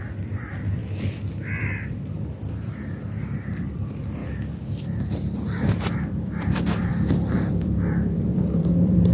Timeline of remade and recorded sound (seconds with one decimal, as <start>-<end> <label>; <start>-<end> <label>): 0.0-4.2 remade; 4.2-6.0 recorded; 6.0-6.9 remade; 6.9-7.5 recorded; 7.5-9.1 remade